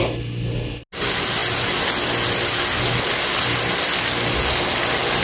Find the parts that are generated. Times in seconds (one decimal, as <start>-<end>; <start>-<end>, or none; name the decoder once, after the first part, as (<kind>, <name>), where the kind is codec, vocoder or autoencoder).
none